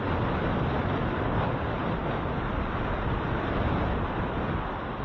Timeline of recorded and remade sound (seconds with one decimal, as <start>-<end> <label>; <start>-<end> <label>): 0.0-5.0 recorded